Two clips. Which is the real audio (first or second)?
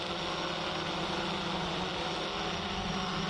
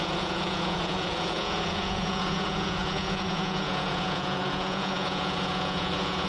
first